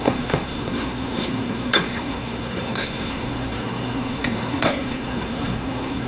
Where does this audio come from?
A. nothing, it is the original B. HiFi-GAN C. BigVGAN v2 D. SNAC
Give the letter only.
D